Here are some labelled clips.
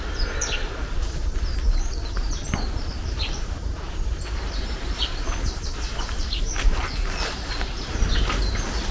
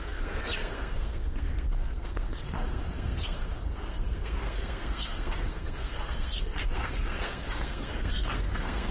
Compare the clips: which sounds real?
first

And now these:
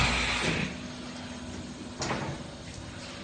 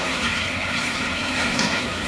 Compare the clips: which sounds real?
first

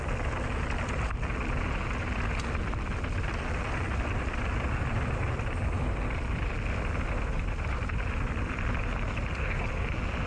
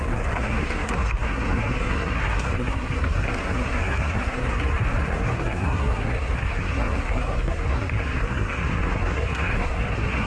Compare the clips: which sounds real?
first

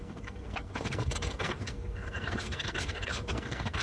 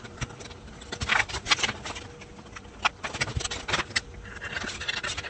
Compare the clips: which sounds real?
second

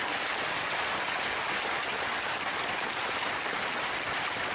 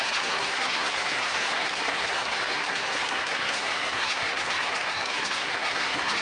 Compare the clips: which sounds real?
first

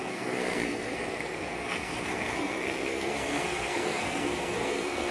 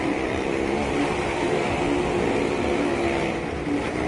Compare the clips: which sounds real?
second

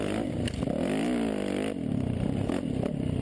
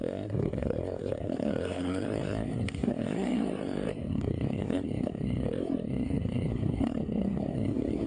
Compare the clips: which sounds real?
first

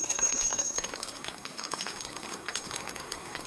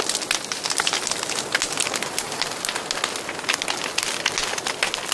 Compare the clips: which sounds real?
second